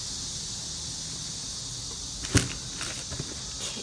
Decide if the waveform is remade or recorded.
recorded